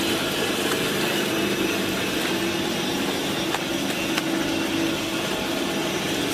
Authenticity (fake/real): real